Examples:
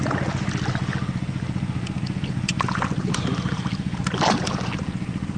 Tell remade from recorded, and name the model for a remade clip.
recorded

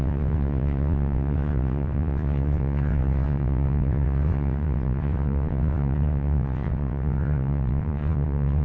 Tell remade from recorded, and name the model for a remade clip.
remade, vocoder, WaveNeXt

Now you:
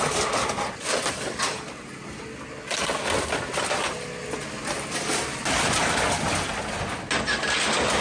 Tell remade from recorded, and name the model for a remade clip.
recorded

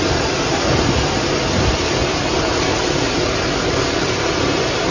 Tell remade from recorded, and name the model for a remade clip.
recorded